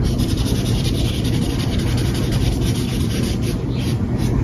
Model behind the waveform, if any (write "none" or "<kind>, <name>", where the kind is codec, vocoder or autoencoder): vocoder, BigVGAN v2